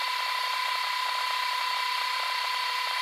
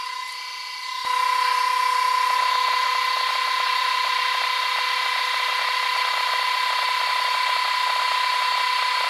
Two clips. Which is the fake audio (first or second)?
first